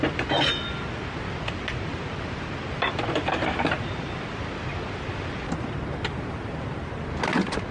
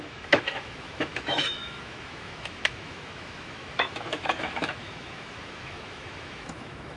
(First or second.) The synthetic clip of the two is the second